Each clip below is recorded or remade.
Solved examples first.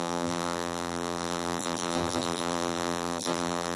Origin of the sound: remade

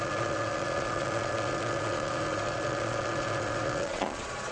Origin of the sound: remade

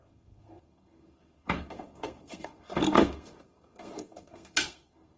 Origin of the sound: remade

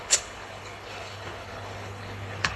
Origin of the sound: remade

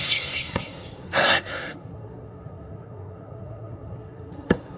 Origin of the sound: remade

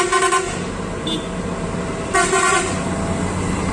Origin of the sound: recorded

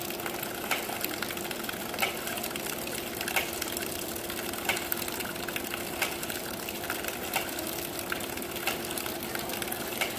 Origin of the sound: recorded